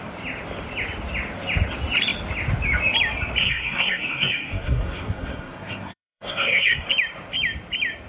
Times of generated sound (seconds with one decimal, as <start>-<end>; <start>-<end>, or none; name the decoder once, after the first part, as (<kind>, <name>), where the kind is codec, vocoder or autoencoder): 3.4-6.9 (codec, SNAC)